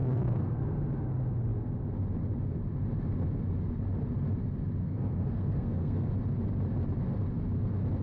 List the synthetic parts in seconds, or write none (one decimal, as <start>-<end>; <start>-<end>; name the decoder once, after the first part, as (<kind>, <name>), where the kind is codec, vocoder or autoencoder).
0.0-0.6 (codec, SNAC); 4.8-6.1